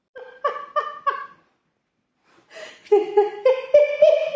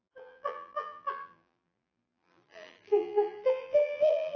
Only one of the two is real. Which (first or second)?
first